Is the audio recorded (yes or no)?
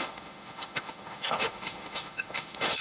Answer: no